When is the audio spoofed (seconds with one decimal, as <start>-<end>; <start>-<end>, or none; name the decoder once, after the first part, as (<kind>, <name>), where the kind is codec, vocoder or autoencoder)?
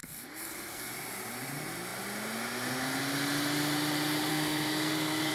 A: 0.0-0.9 (codec, SNAC); 4.3-5.3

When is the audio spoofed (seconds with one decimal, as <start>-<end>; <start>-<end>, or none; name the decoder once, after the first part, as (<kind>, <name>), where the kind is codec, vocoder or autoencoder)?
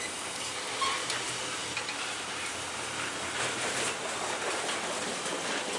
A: none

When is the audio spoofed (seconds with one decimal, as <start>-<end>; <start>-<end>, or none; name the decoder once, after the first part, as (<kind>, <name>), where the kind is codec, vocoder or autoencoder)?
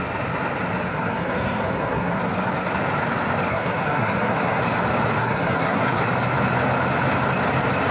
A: 0.9-2.2 (codec, SNAC); 3.5-4.6; 5.2-6.0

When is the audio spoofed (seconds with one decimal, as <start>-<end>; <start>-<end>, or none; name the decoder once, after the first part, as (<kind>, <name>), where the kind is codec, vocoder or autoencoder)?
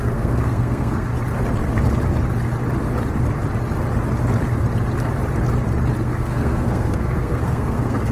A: 0.0-1.1 (codec, SNAC); 6.0-8.1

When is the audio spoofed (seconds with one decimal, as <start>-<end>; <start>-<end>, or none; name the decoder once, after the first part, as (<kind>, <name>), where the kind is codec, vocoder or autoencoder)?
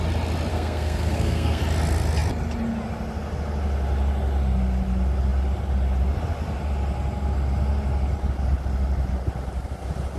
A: 0.5-1.6 (codec, SNAC)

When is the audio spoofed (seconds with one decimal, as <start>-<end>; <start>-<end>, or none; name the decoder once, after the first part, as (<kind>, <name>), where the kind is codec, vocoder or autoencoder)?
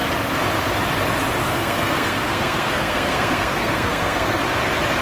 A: 1.4-4.4 (codec, SNAC)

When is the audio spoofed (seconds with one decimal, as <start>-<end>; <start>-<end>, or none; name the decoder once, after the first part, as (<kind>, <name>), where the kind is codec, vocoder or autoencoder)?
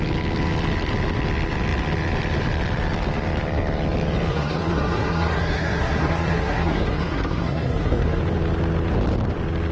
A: 4.3-8.2 (codec, SNAC)